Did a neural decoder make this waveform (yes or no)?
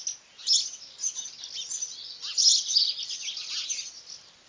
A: no